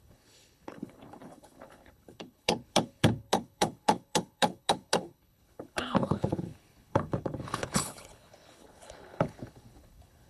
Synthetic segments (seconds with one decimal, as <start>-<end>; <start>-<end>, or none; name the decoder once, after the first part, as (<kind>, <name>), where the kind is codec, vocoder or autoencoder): 0.0-10.3 (codec, HILCodec)